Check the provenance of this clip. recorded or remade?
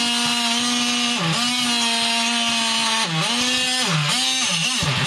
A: recorded